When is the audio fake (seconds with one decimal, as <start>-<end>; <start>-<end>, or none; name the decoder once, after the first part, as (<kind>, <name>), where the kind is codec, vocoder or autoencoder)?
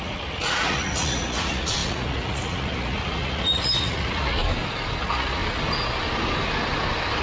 0.0-4.4 (vocoder, Vocos); 5.0-5.4